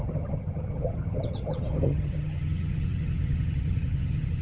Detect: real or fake fake